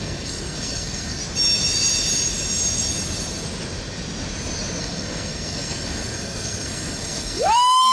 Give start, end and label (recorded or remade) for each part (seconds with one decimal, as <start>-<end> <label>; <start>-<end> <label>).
0.0-1.2 remade; 1.2-4.8 recorded; 4.8-7.9 remade